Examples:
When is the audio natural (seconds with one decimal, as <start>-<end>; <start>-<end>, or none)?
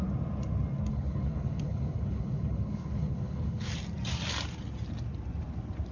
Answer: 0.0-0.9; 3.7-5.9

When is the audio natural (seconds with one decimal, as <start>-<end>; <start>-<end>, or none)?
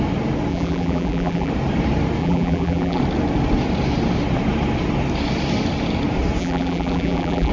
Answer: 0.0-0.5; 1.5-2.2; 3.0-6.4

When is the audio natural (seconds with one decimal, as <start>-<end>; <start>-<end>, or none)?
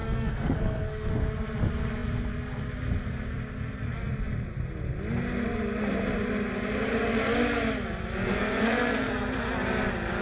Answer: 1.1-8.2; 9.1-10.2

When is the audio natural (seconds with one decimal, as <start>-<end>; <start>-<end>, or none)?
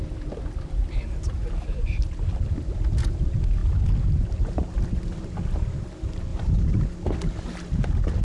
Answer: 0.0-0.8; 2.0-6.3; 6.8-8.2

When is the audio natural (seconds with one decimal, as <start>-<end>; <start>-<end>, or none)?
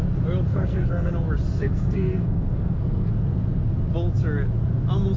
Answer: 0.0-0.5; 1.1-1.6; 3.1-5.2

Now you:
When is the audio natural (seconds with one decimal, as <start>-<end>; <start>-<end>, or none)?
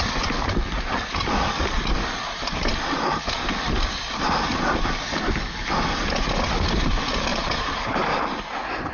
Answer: 0.0-7.3; 8.2-8.9